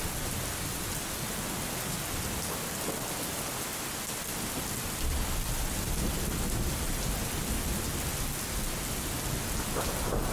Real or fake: real